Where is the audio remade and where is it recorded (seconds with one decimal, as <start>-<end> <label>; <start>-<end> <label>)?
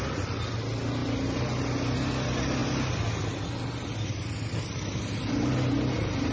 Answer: 0.0-6.3 recorded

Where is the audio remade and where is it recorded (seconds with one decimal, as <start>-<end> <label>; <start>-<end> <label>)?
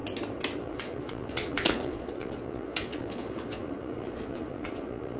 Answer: 0.0-0.6 recorded; 0.6-5.2 remade